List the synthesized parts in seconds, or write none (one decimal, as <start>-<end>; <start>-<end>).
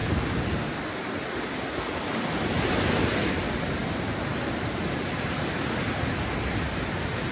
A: none